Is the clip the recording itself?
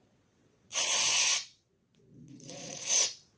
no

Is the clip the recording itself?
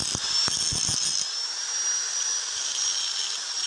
yes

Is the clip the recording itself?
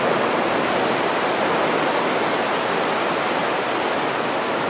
yes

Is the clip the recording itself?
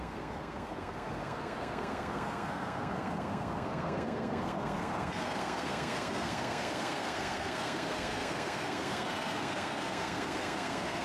no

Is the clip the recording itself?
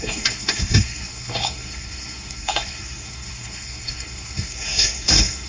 no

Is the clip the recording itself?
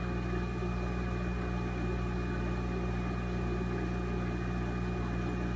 yes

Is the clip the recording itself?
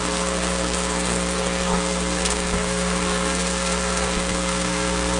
no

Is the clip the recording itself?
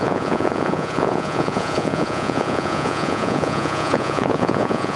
no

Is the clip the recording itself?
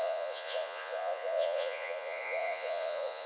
no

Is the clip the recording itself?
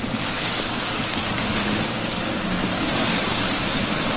no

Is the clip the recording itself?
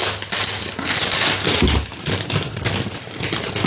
yes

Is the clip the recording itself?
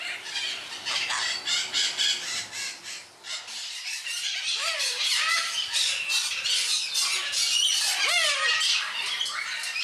yes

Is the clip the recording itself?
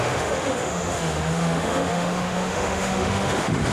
no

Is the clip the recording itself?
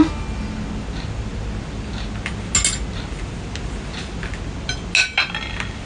yes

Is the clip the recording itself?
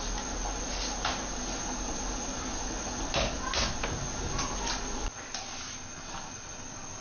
yes